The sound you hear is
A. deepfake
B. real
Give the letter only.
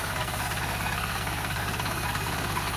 A